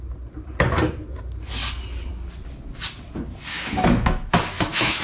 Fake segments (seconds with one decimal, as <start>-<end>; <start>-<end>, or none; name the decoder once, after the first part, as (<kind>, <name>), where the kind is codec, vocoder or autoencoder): 3.5-5.0 (autoencoder, DAC-VAE)

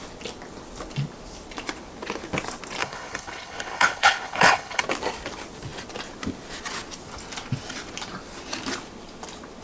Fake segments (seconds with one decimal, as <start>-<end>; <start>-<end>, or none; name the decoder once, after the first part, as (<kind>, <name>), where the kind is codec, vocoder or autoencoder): 2.8-4.8 (codec, HILCodec)

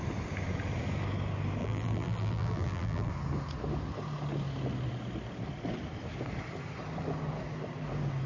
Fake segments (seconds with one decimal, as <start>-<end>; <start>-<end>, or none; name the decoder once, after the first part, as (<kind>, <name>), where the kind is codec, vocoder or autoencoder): 1.6-3.1 (vocoder, BigVGAN v2)

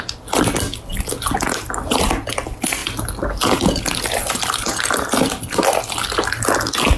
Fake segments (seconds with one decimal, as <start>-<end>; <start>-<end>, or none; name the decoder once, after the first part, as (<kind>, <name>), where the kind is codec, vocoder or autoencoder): none

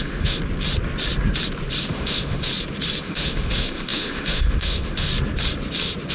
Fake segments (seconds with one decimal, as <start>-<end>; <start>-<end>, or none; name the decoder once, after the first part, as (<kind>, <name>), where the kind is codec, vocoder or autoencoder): 0.0-0.4 (autoencoder, DAC-VAE); 1.8-2.5; 3.0-5.1

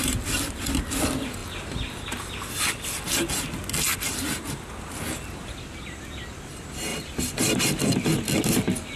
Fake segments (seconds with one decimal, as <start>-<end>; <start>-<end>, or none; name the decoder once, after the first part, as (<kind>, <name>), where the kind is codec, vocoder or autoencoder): 6.9-8.4 (vocoder, BigVGAN v2)

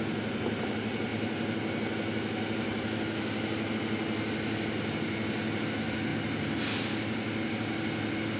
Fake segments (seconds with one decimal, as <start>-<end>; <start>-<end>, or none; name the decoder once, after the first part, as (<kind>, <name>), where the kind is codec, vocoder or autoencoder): none